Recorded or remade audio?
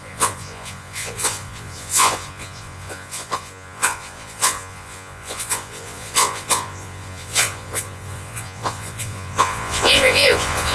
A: remade